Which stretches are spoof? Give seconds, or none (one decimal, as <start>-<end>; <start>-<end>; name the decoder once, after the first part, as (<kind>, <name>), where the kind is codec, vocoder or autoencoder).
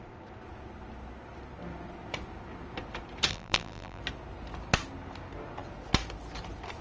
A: 3.3-4.0 (vocoder, BigVGAN v2)